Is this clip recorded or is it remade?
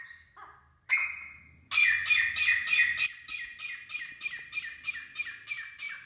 recorded